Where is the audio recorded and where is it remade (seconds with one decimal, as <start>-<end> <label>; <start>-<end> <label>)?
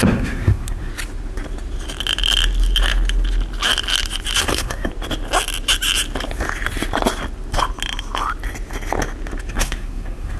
0.0-0.9 remade; 0.9-4.4 recorded; 4.4-4.9 remade; 4.9-9.5 recorded; 9.5-10.4 remade